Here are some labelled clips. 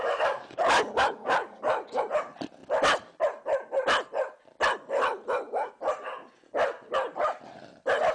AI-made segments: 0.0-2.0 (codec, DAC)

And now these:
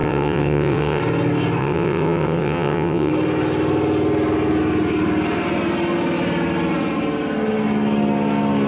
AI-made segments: 0.0-1.0 (vocoder, WaveNeXt); 1.6-3.1

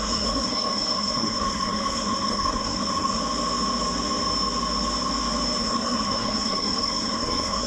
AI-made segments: 0.0-3.2 (codec, SNAC); 5.6-7.7

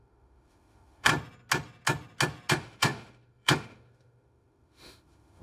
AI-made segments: 0.0-1.1 (autoencoder, DAC-VAE); 2.5-5.4

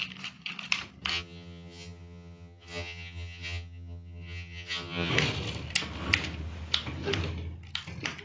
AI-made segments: 1.1-5.1 (vocoder, HiFi-GAN)

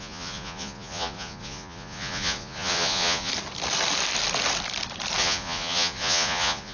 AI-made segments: 0.0-3.3 (vocoder, Vocos); 5.2-6.7

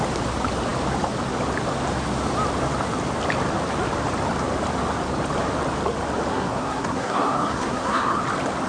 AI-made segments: 6.3-8.2 (codec, SNAC)

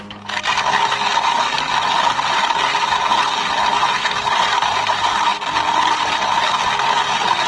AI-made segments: none